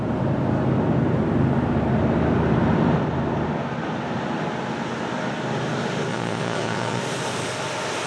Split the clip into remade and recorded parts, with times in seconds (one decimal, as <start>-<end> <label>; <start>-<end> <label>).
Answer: 0.0-6.1 recorded; 6.1-7.0 remade; 7.0-8.1 recorded